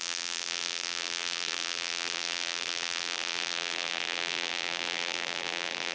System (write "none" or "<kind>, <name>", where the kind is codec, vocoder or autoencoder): vocoder, BigVGAN v2